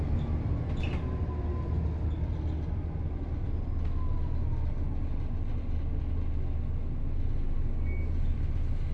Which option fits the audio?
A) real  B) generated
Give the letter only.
A